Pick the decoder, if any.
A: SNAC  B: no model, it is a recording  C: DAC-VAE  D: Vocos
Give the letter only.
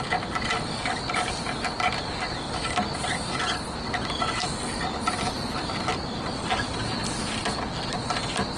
B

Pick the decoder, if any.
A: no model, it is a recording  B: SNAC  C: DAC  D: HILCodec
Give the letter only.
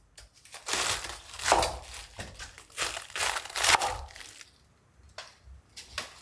A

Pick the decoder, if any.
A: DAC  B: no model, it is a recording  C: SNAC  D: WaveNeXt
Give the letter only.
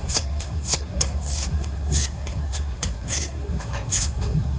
C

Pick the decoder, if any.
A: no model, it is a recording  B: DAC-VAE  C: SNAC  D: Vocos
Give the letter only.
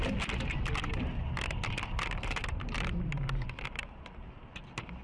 A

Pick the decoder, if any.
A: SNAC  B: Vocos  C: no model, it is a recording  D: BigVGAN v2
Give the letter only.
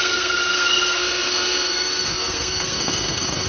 A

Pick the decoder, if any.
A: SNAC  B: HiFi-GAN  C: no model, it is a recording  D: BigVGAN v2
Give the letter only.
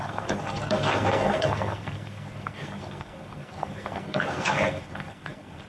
A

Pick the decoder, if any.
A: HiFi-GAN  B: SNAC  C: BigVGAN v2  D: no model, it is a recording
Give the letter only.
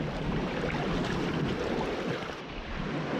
D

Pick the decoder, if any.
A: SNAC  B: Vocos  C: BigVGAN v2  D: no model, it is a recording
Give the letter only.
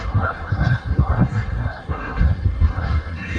A